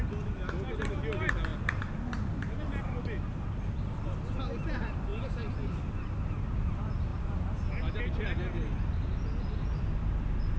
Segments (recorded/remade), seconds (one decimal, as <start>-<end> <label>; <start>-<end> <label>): 0.0-10.6 recorded